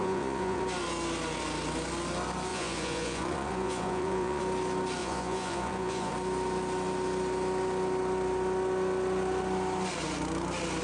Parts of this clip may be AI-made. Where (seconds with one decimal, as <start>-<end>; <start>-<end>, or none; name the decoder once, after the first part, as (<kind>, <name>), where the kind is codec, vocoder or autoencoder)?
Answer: 0.0-0.6 (vocoder, Vocos); 2.5-4.4; 5.0-6.1